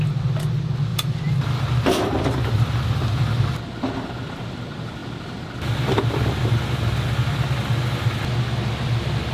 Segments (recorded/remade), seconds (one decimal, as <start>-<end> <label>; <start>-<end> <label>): 0.0-0.9 recorded; 0.9-4.6 remade; 4.6-9.3 recorded